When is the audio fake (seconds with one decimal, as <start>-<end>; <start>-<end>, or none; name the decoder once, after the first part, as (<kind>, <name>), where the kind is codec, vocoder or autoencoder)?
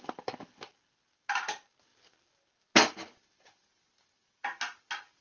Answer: none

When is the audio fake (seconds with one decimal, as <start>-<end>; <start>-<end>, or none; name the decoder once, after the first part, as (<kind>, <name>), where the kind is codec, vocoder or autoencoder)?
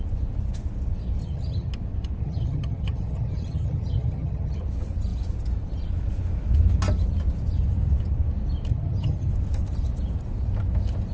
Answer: 1.2-1.7 (vocoder, HiFi-GAN); 2.2-4.6; 8.7-9.3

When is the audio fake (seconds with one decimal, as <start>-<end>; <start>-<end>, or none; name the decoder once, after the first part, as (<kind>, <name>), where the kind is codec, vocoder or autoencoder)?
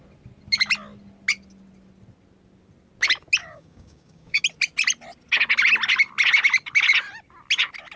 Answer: 3.4-4.4 (codec, DAC)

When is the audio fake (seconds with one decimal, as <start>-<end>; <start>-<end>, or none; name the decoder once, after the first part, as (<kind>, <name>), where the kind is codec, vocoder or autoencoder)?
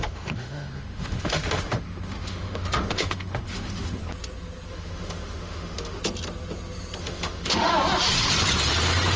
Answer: 0.0-4.0 (autoencoder, DAC-VAE); 4.7-6.0; 7.0-7.7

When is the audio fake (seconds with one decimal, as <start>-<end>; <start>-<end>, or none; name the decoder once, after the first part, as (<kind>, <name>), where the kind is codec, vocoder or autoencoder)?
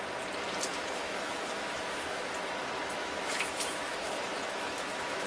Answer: 0.7-2.3 (autoencoder, DAC-VAE); 3.0-5.3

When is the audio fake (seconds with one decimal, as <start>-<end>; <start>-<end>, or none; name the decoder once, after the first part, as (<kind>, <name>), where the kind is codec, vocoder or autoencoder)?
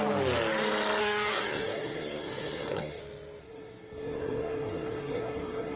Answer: 1.0-3.0 (codec, SNAC); 3.4-5.8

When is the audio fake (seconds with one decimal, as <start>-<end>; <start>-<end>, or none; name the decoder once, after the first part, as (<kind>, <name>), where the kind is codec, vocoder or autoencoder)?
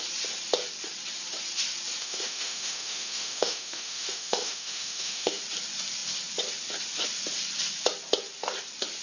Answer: 2.0-5.4 (autoencoder, DAC-VAE)